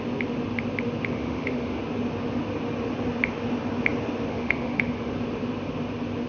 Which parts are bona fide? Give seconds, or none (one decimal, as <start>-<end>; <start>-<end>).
0.0-1.1; 1.8-4.3; 5.1-6.3